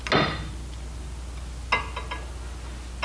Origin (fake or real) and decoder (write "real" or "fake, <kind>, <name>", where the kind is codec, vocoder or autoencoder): real